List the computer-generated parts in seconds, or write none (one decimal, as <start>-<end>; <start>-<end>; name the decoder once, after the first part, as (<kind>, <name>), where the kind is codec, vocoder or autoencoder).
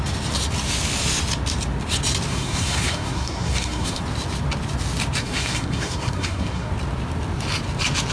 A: 2.3-4.0 (codec, SNAC); 5.2-6.7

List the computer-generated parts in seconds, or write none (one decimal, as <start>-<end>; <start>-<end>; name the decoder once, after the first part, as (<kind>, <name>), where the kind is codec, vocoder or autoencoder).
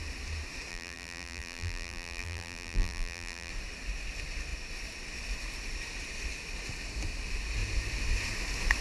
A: 0.7-3.5 (vocoder, BigVGAN v2)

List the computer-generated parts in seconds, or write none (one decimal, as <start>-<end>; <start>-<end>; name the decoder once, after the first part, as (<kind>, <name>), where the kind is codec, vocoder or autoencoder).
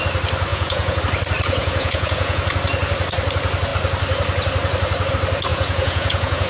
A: 0.5-1.0 (vocoder, Vocos); 1.6-2.4; 5.5-6.5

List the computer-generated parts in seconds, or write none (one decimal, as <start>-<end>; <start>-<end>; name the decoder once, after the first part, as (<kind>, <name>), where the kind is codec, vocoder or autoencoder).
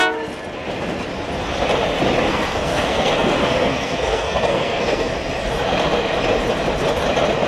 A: 2.3-5.1 (codec, SNAC)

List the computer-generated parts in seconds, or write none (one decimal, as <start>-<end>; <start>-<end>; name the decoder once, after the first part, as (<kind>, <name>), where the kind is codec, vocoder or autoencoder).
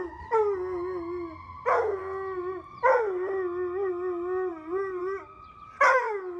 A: none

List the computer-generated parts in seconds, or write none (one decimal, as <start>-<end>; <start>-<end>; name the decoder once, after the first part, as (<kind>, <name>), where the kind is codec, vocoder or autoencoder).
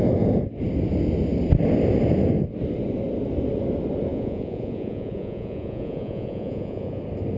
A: 4.1-7.0 (vocoder, Vocos)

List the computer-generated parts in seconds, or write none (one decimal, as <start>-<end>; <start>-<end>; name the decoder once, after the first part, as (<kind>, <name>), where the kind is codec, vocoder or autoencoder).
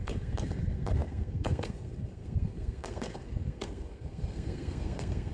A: 0.0-5.3 (codec, SNAC)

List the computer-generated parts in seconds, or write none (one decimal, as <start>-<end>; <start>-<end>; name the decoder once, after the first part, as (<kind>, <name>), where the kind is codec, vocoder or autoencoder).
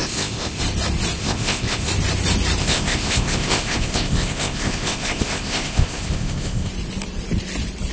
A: 0.0-0.6 (codec, ZipCodec); 1.2-1.9; 2.6-6.7